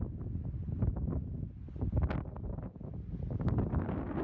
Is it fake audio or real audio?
real